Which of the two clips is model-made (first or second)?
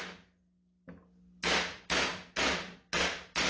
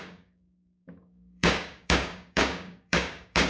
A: second